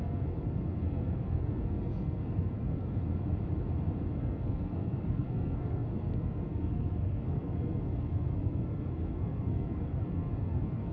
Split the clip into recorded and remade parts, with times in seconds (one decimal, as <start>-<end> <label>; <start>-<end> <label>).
0.0-3.1 remade; 3.1-4.2 recorded; 4.2-10.9 remade